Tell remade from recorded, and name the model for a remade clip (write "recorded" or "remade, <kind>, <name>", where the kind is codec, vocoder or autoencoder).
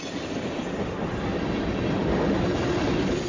recorded